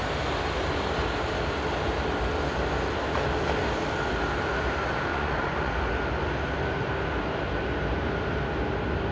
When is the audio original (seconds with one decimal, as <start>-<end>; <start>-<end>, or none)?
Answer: 0.0-5.1; 5.7-9.1